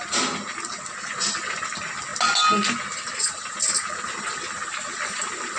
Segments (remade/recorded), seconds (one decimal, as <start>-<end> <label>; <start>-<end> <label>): 0.0-5.6 recorded